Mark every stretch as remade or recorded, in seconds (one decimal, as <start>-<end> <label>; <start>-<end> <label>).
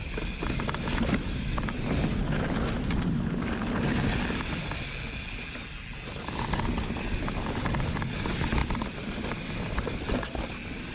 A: 0.0-10.9 recorded